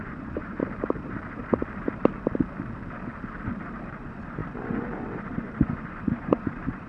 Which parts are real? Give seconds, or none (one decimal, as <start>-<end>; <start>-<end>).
0.6-3.9